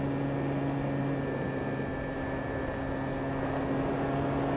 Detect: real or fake real